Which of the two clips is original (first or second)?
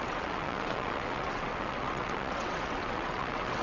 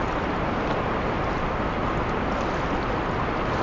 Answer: second